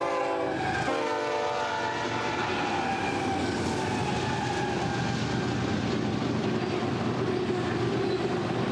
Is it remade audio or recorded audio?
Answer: recorded